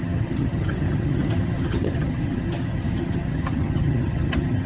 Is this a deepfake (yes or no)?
yes